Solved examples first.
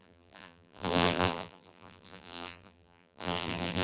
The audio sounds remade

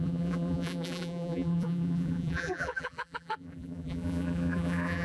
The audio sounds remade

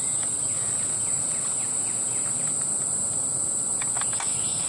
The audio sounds recorded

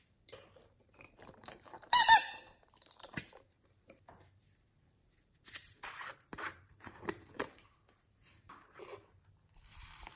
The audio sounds remade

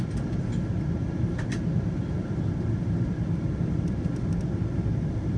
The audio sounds remade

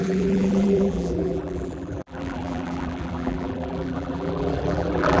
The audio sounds remade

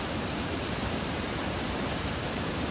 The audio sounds remade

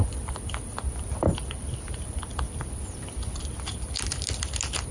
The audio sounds remade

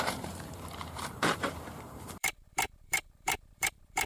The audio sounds remade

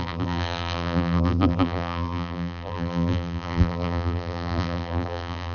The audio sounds remade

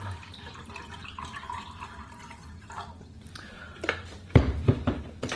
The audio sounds remade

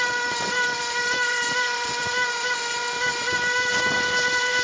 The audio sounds remade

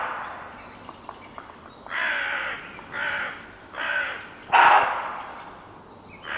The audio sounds recorded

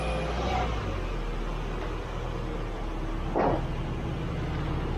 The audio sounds recorded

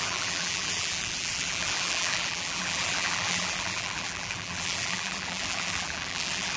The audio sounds remade